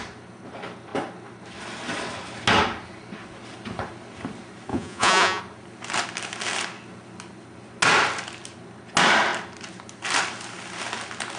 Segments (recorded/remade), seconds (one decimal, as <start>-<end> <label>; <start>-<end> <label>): 0.0-4.7 recorded; 4.7-5.4 remade; 5.4-11.4 recorded